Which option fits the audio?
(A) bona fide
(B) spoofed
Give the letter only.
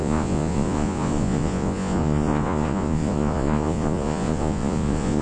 B